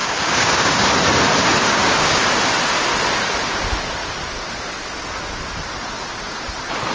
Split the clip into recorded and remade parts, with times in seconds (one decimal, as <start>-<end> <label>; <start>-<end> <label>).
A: 0.0-0.9 remade; 0.9-1.6 recorded; 1.6-2.2 remade; 2.2-6.9 recorded